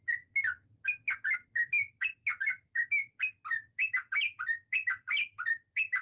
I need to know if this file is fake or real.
real